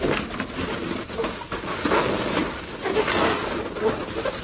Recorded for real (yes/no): yes